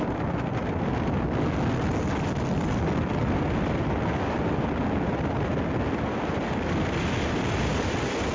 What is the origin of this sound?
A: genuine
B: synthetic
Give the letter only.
A